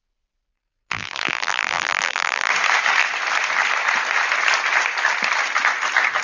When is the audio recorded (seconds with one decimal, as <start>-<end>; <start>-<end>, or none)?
0.0-0.5; 2.5-6.2